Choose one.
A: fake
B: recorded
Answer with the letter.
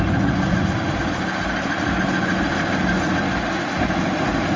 B